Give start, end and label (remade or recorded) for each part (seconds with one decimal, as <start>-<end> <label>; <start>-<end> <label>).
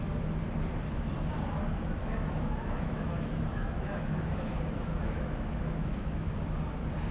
0.0-2.0 recorded; 2.0-6.3 remade; 6.3-7.1 recorded